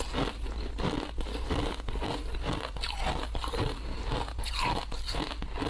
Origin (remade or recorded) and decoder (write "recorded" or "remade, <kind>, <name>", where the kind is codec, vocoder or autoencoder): recorded